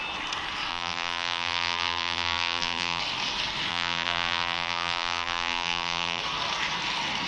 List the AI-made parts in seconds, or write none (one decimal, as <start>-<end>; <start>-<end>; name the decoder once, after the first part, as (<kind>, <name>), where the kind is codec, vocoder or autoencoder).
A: 0.7-3.0 (vocoder, BigVGAN v2); 3.7-6.2